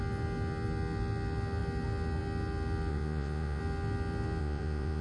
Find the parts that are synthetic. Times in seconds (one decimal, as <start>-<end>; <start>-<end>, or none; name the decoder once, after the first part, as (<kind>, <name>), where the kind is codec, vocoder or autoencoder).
2.9-3.6 (vocoder, Vocos); 4.4-5.0

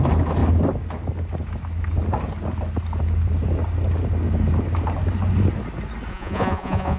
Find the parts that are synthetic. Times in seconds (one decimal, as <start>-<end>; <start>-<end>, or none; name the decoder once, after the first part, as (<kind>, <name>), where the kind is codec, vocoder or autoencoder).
6.1-7.0 (vocoder, Vocos)

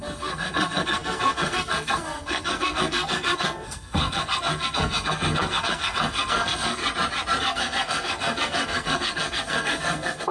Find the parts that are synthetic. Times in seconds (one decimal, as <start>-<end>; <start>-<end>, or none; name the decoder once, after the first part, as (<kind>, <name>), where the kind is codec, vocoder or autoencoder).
0.0-6.8 (codec, SNAC); 7.4-10.3

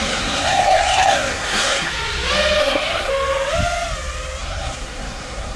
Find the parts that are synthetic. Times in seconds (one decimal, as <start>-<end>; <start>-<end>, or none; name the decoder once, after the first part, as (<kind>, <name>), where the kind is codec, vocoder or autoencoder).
0.0-1.9 (codec, SNAC); 2.6-3.1; 4.4-5.6

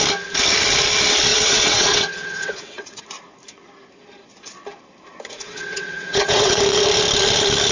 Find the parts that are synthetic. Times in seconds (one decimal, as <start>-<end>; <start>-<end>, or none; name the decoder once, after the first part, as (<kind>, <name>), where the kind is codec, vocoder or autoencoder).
1.3-3.0 (vocoder, WaveNeXt); 5.4-6.6

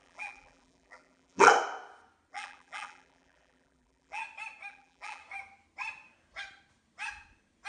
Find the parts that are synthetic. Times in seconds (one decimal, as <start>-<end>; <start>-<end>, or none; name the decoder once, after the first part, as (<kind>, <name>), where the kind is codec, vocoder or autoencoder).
0.0-1.5 (vocoder, BigVGAN v2); 2.3-4.2; 4.7-5.2

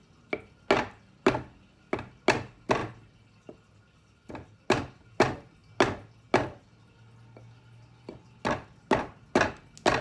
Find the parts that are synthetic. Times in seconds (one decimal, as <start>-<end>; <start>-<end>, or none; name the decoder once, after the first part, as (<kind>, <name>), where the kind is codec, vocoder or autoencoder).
none

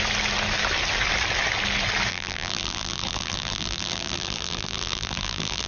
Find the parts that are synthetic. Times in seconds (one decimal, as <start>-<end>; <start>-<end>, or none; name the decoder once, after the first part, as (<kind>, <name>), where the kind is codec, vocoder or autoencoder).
2.1-5.7 (vocoder, BigVGAN v2)